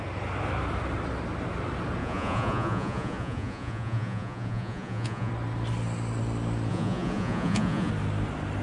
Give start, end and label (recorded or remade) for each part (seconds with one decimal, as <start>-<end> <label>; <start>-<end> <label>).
0.0-2.0 recorded; 2.0-5.3 remade; 5.3-6.7 recorded; 6.7-7.9 remade; 7.9-8.6 recorded